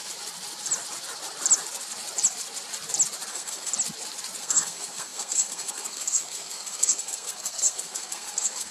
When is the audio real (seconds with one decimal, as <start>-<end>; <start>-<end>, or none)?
0.0-3.3; 3.7-4.4